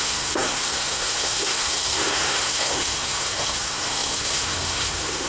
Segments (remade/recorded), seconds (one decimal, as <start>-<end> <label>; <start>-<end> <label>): 0.0-5.3 remade

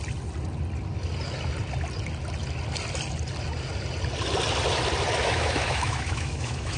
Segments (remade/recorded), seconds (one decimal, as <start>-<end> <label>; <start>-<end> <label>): 0.0-5.2 recorded; 5.2-6.8 remade

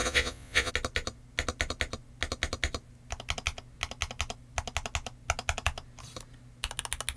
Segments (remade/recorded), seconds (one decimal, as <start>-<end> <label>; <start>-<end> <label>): 0.0-0.7 remade; 0.7-7.2 recorded

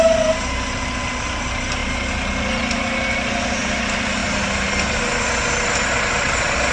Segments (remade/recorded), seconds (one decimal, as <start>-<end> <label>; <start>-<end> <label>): 0.0-6.7 recorded